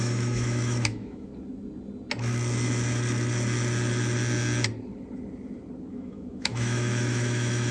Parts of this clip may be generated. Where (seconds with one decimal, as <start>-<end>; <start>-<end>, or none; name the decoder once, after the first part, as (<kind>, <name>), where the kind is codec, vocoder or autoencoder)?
0.0-1.3 (autoencoder, DAC-VAE); 5.9-7.7